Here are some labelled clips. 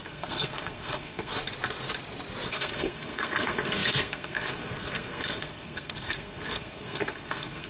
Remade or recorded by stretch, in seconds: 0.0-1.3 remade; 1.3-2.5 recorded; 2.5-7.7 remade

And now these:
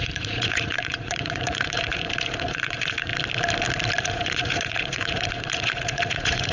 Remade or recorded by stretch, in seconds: 0.0-3.1 remade; 3.1-4.0 recorded; 4.0-6.5 remade

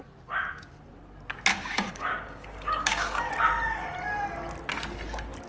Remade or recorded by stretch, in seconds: 0.0-1.5 recorded; 1.5-3.3 remade; 3.3-5.5 recorded

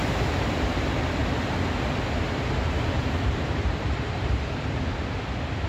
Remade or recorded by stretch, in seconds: 0.0-0.6 remade; 0.6-3.0 recorded; 3.0-4.8 remade; 4.8-5.7 recorded